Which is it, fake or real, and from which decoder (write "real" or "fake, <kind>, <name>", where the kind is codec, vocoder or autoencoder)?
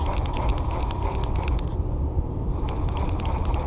real